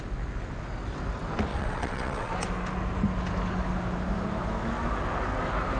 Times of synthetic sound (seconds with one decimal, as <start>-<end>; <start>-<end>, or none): 1.5-2.3